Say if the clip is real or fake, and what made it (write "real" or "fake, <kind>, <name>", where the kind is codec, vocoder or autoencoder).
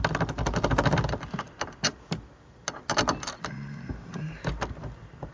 real